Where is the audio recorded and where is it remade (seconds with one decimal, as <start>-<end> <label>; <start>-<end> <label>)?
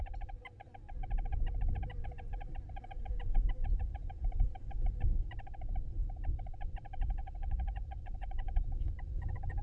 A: 0.0-7.2 recorded; 7.2-8.6 remade; 8.6-9.6 recorded